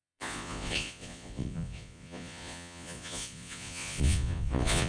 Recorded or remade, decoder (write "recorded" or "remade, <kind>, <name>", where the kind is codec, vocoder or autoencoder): remade, vocoder, Vocos